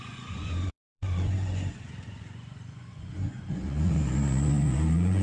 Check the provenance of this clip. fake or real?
fake